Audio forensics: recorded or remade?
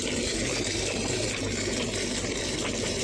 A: recorded